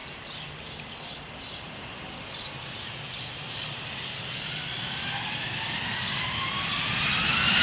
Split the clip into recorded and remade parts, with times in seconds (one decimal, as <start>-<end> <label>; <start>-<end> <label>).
0.0-0.6 remade; 0.6-7.6 recorded